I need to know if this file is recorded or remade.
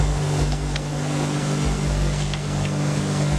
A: remade